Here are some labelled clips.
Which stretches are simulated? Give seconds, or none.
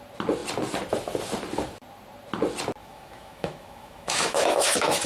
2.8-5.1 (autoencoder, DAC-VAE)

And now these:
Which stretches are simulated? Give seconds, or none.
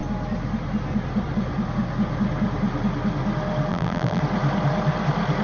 3.7-4.2 (vocoder, BigVGAN v2)